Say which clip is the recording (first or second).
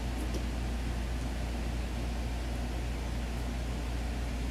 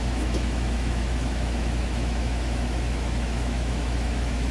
first